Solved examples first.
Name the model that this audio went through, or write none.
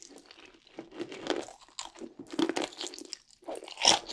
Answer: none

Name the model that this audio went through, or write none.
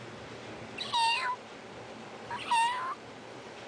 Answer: none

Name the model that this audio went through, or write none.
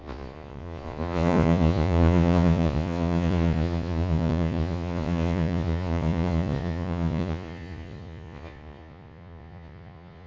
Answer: vocoder, Vocos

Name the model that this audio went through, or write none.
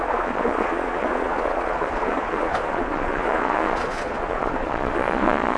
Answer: vocoder, Vocos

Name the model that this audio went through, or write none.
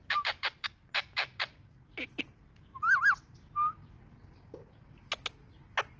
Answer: none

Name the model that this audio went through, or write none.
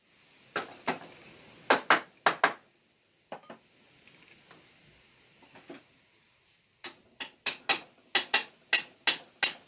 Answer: none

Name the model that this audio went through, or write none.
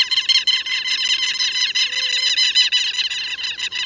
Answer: none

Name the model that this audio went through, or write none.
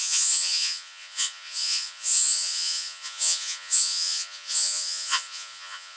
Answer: vocoder, Vocos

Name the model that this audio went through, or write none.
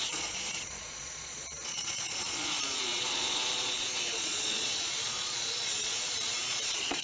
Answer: vocoder, Vocos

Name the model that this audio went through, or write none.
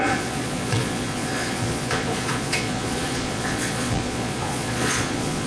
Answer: vocoder, Vocos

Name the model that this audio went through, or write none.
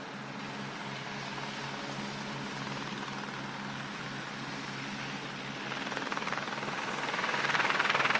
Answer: none